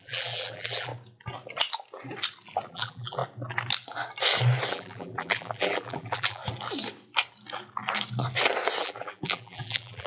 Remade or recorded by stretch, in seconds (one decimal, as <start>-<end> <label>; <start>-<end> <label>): 0.0-0.9 remade; 0.9-2.7 recorded; 2.7-3.2 remade; 3.2-4.7 recorded; 4.7-6.4 remade; 6.4-8.8 recorded; 8.8-10.1 remade